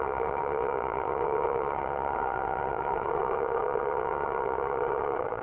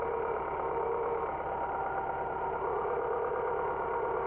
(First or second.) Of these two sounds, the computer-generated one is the first